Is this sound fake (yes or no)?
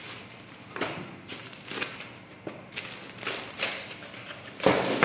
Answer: no